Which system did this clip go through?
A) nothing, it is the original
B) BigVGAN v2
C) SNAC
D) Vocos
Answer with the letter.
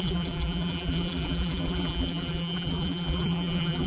B